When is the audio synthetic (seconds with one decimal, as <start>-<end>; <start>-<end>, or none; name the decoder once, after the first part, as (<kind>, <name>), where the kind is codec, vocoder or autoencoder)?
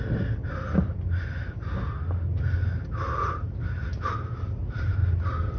4.6-5.6 (vocoder, BigVGAN v2)